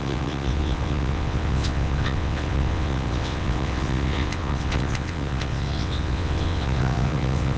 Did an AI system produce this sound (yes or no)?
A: yes